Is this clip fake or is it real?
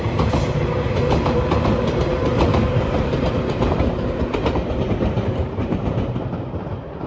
fake